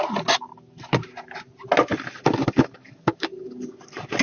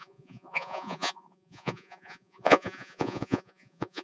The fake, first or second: second